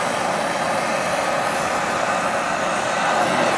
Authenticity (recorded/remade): recorded